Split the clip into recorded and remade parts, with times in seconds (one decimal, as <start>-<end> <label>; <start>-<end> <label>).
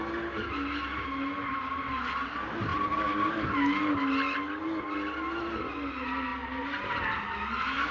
0.0-7.9 recorded